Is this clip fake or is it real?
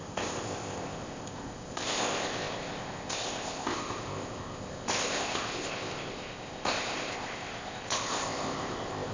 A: fake